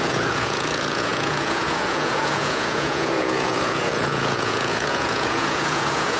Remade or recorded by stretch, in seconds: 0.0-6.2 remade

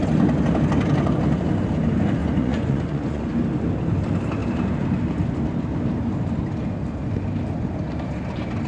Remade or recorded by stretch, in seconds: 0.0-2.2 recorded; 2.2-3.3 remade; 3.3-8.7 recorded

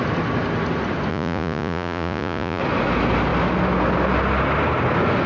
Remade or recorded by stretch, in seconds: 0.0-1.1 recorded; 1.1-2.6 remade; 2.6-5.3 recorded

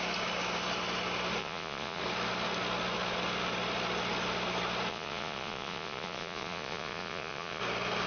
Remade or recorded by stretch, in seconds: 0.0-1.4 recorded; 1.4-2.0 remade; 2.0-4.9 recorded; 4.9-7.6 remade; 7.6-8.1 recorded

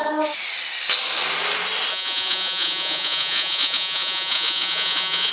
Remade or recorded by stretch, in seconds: 0.0-1.9 recorded; 1.9-5.3 remade

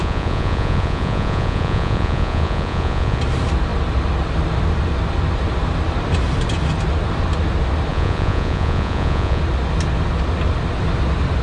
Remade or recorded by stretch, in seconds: 0.0-3.2 remade; 3.2-7.9 recorded; 7.9-9.4 remade; 9.4-11.4 recorded